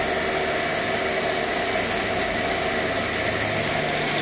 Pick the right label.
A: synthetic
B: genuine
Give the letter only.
B